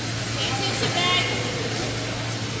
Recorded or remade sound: recorded